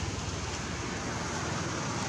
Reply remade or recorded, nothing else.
recorded